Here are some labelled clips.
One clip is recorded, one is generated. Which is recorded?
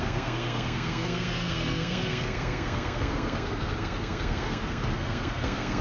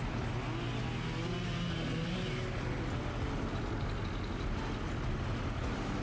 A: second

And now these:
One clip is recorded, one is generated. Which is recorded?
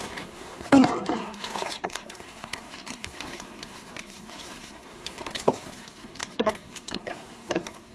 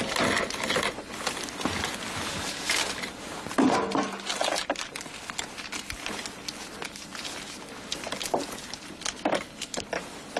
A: second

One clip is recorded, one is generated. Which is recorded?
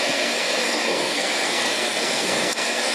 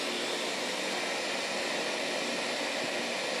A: second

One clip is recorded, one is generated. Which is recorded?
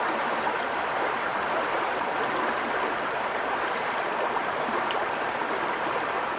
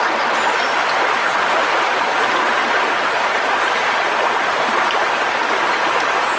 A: second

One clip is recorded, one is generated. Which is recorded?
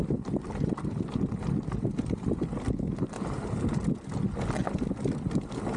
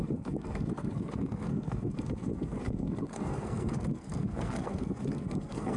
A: first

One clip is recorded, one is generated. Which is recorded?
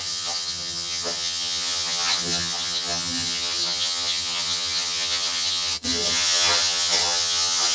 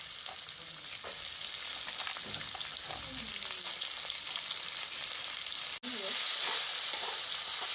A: second